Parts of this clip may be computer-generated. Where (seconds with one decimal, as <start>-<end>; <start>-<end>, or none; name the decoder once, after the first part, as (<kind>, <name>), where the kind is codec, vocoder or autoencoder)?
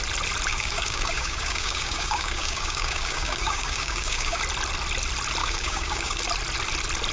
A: 0.5-4.4 (codec, DAC); 5.4-6.2